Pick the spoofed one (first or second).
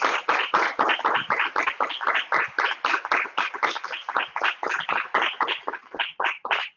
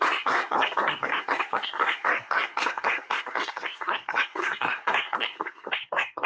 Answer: second